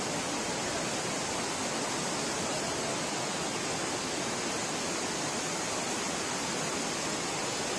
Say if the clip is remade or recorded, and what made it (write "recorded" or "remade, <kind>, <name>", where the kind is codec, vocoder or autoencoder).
recorded